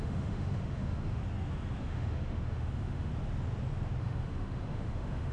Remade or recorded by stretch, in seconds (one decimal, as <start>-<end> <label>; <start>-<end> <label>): 0.0-1.2 remade; 1.2-1.8 recorded; 1.8-3.1 remade; 3.1-4.0 recorded; 4.0-5.3 remade